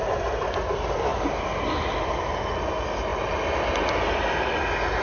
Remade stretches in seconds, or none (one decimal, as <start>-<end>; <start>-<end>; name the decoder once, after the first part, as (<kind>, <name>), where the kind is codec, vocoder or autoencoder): 1.1-1.9 (vocoder, BigVGAN v2)